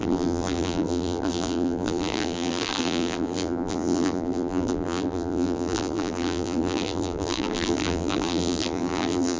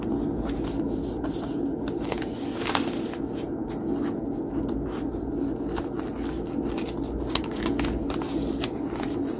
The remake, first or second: first